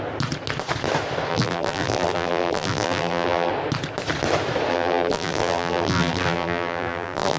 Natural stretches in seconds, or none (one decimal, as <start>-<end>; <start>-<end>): 0.0-1.3; 3.5-4.7